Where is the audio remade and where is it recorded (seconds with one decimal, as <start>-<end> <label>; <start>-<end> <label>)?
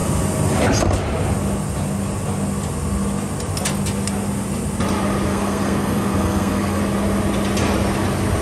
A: 0.0-5.3 recorded; 5.3-6.8 remade; 6.8-8.4 recorded